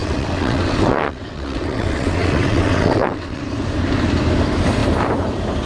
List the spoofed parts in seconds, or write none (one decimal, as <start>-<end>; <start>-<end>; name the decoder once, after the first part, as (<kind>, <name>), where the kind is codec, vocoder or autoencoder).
0.0-3.4 (vocoder, WaveNeXt)